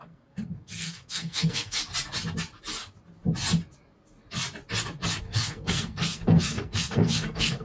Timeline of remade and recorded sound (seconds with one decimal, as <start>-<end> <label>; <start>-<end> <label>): 0.0-1.8 remade; 1.8-5.2 recorded; 5.2-7.6 remade